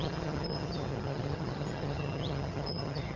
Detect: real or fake fake